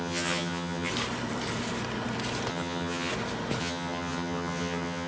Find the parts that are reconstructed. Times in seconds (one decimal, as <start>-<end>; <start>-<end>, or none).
0.0-0.9; 2.5-3.1; 3.6-5.1